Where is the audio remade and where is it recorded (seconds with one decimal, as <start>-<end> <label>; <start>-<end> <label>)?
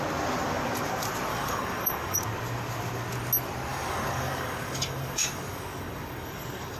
0.0-1.3 recorded; 1.3-2.2 remade; 2.2-3.7 recorded; 3.7-6.8 remade